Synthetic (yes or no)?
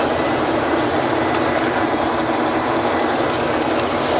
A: yes